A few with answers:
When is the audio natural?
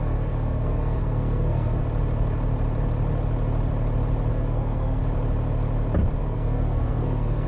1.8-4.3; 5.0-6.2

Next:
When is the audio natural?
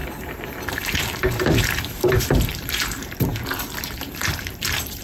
3.3-3.8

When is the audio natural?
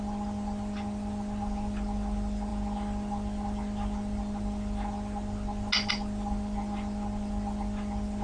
0.0-8.2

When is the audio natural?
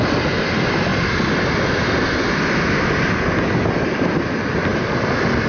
0.0-5.5